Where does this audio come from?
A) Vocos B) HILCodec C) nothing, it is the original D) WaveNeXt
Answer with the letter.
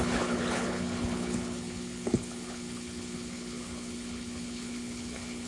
B